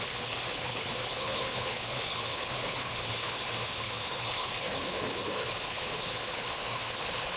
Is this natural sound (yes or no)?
no